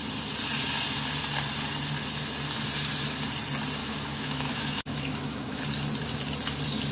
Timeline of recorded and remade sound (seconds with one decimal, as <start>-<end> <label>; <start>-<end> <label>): 0.0-3.8 recorded; 3.8-5.6 remade; 5.6-6.9 recorded